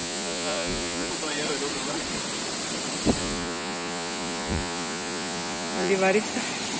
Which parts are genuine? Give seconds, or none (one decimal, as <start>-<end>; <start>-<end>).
1.1-3.2; 5.9-6.8

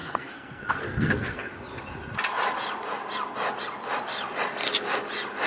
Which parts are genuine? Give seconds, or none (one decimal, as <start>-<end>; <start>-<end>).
1.5-5.5

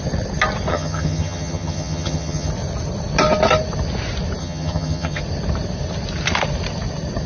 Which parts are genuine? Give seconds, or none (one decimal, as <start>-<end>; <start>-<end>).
0.0-0.7; 2.5-4.4; 5.2-7.3

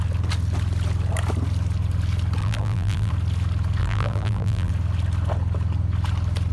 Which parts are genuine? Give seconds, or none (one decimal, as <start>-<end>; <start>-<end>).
0.0-2.4; 3.1-3.8; 4.7-6.5

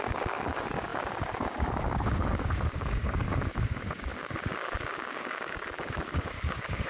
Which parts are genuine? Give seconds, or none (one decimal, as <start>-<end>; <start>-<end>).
none

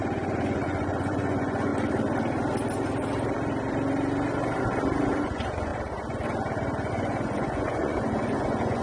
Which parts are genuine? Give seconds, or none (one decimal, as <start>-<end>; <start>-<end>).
1.7-5.2; 5.7-6.9

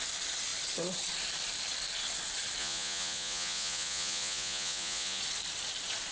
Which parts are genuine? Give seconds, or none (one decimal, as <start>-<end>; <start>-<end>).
0.0-2.6; 5.2-6.1